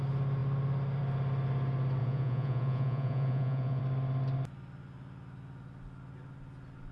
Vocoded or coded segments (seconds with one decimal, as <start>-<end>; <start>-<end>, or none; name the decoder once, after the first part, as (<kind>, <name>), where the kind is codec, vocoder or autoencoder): 2.0-3.8 (vocoder, Vocos)